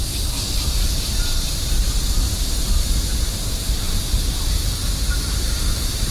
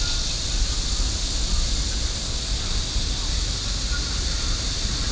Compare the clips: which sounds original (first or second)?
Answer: second